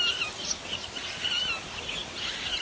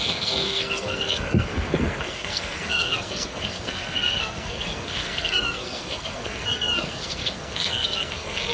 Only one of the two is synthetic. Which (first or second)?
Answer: second